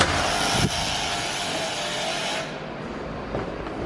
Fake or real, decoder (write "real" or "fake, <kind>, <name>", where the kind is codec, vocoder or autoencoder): real